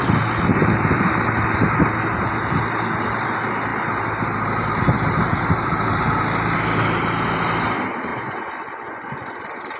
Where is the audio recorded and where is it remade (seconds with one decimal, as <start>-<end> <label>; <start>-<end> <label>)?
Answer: 0.0-8.1 recorded; 8.1-9.4 remade; 9.4-9.8 recorded